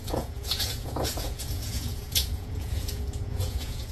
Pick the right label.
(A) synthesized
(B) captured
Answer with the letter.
A